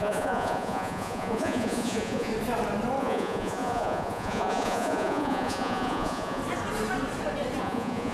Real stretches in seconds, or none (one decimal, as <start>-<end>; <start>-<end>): 2.3-3.0; 6.4-7.6